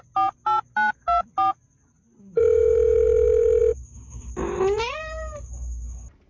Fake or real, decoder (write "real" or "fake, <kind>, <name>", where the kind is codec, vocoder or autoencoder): real